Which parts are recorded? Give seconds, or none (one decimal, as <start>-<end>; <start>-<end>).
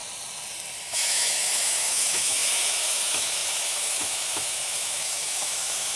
0.0-0.8